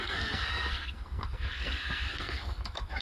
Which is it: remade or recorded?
remade